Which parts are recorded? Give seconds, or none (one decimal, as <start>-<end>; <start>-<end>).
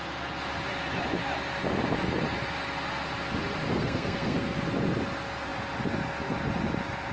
0.0-3.7; 4.6-7.1